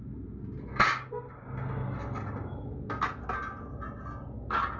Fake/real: real